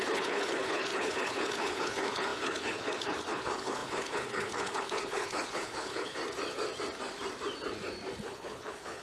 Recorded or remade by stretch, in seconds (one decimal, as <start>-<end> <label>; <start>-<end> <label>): 0.0-6.2 remade; 6.2-8.2 recorded; 8.2-9.0 remade